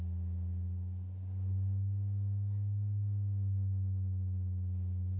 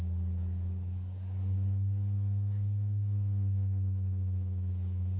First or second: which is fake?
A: second